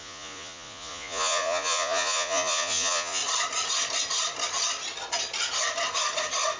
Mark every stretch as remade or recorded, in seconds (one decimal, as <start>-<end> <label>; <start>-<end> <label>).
0.0-3.2 remade; 3.2-6.6 recorded